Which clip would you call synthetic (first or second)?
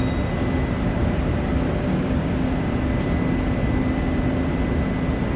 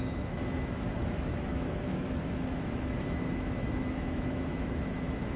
second